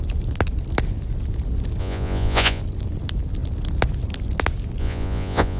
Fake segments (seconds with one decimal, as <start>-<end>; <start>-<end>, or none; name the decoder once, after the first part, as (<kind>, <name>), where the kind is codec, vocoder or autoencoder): 1.8-2.6 (vocoder, Vocos); 4.8-5.6